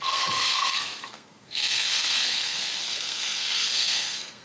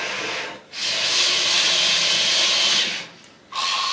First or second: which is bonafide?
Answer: second